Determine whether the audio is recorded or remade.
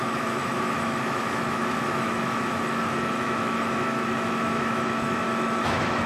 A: remade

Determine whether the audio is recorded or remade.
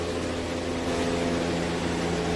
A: recorded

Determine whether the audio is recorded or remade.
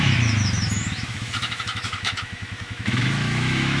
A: remade